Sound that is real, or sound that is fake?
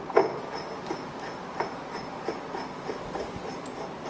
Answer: real